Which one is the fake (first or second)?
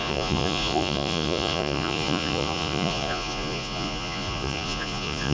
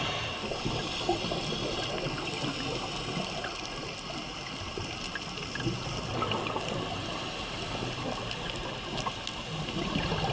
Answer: first